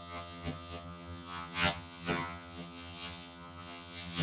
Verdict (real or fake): fake